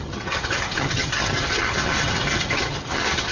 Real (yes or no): no